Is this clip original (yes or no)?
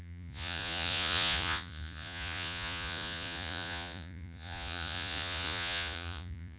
no